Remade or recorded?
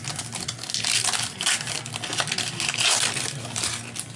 recorded